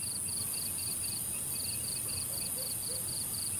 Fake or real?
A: real